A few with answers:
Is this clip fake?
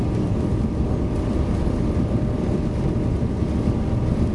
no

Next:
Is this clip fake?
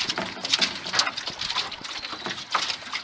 no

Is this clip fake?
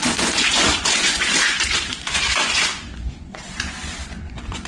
yes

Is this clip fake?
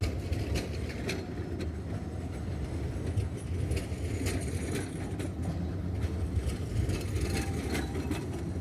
no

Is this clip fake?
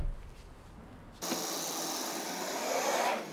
no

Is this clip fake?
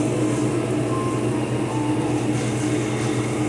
no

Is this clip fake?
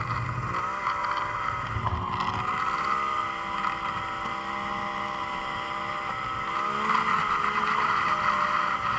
no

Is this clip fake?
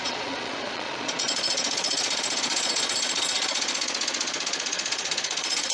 yes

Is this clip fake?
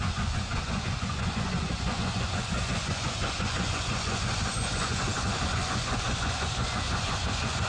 yes